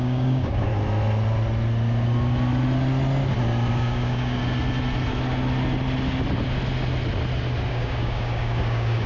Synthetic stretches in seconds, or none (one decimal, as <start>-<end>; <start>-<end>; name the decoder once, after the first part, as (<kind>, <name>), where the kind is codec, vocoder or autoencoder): 0.0-0.7 (codec, DAC); 3.7-4.4; 7.7-9.1